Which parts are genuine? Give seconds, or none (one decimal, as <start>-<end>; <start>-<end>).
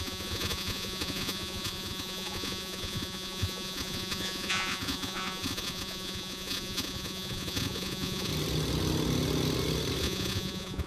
8.3-10.0